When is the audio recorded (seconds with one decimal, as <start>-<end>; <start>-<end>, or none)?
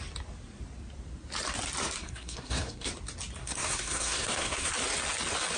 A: 0.0-2.0; 2.9-3.4; 4.7-5.6